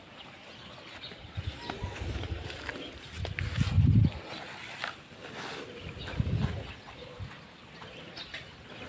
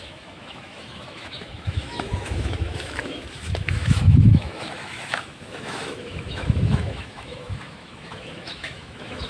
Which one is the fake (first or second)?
second